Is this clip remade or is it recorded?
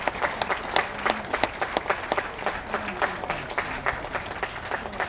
recorded